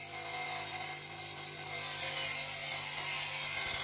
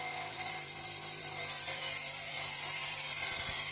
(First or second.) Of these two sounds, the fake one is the second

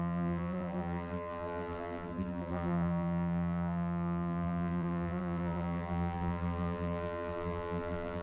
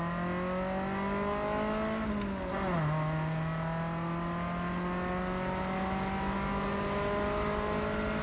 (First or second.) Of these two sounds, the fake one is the first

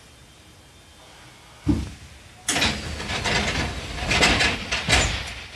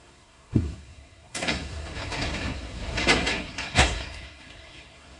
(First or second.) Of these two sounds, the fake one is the second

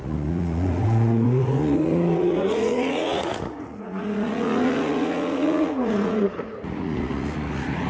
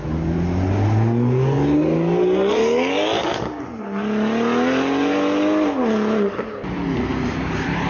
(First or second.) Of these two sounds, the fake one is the first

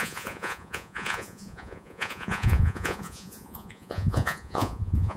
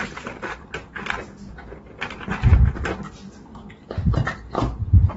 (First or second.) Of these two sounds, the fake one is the first